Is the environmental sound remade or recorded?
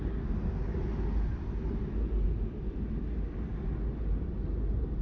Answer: recorded